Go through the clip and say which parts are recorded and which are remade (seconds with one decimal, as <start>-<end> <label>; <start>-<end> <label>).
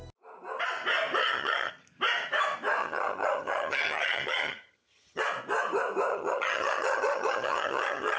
0.0-1.2 recorded; 1.2-1.7 remade; 1.7-2.8 recorded; 2.8-5.2 remade; 5.2-6.1 recorded; 6.1-8.2 remade